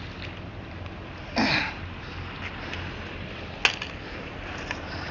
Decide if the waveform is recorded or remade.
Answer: recorded